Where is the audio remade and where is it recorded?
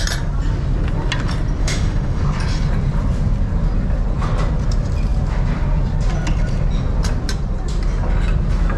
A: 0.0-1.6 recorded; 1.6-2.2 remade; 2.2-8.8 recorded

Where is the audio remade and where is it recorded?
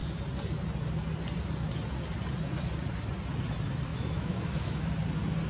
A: 0.0-3.9 recorded; 3.9-4.8 remade; 4.8-5.5 recorded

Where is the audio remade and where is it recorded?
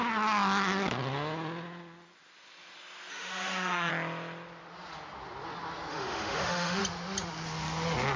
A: 0.0-3.1 recorded; 3.1-3.9 remade; 3.9-5.9 recorded; 5.9-6.8 remade; 6.8-8.2 recorded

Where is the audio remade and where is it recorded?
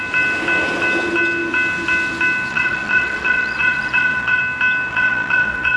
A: 0.0-2.5 recorded; 2.5-4.4 remade; 4.4-4.9 recorded; 4.9-5.8 remade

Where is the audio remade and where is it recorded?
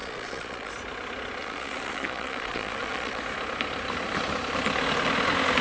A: 0.0-0.7 remade; 0.7-1.4 recorded; 1.4-3.2 remade; 3.2-5.6 recorded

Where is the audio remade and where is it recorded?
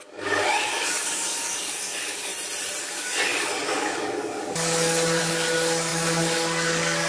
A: 0.0-2.3 remade; 2.3-2.8 recorded; 2.8-7.1 remade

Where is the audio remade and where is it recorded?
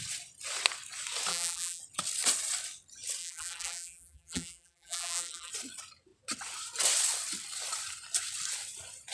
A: 0.0-1.3 recorded; 1.3-1.8 remade; 1.8-3.2 recorded; 3.2-5.5 remade; 5.5-9.1 recorded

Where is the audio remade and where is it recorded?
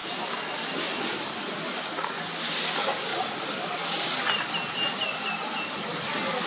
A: 0.0-6.5 recorded